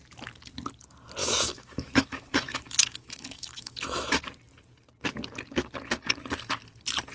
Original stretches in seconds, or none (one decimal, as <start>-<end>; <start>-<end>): 0.0-1.2; 4.2-7.1